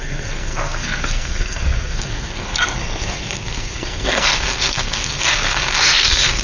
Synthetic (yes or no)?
yes